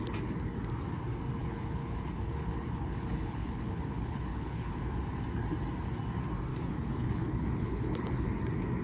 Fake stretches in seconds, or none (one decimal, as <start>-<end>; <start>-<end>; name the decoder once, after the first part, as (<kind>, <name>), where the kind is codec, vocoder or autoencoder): 1.4-4.8 (codec, HILCodec); 6.5-8.3